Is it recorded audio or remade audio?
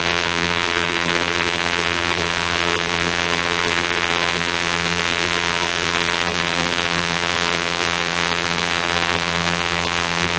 remade